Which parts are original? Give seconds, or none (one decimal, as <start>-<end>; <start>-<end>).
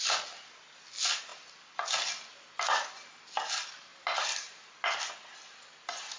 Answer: 0.0-3.9; 4.7-6.2